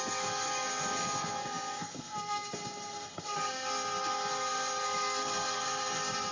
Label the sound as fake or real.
fake